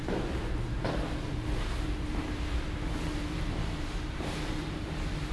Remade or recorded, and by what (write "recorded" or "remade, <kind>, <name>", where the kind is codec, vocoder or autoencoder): remade, vocoder, BigVGAN v2